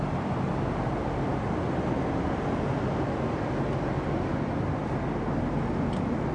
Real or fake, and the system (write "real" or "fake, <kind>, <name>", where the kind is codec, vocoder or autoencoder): real